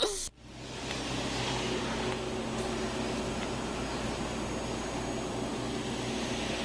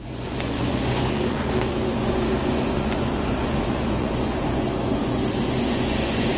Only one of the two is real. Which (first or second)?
first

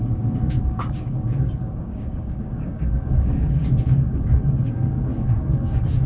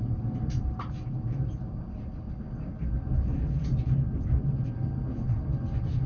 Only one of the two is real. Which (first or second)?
second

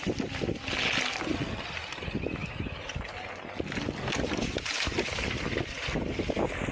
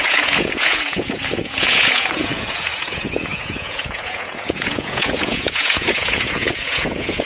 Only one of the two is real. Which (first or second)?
first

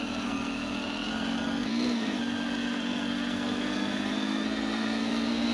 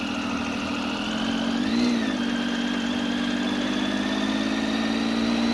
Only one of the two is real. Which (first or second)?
second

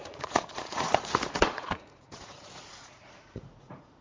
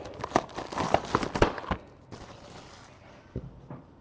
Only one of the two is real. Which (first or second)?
second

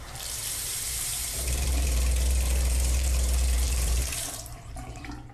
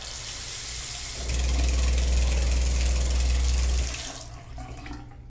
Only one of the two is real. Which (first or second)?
second